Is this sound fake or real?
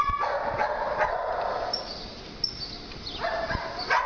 real